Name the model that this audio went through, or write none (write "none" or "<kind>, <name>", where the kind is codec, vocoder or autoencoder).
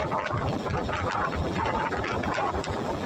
vocoder, BigVGAN v2